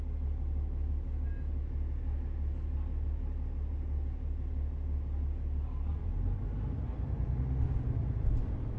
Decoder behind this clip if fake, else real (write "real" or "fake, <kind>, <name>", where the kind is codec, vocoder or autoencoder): real